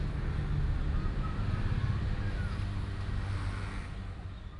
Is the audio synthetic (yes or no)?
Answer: no